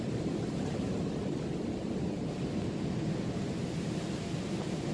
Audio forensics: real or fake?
real